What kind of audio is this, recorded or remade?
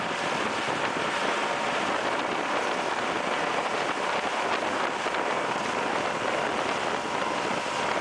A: recorded